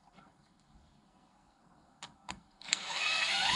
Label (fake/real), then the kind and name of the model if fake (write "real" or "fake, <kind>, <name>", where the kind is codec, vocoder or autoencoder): fake, codec, SNAC